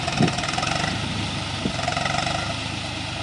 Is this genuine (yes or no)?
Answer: yes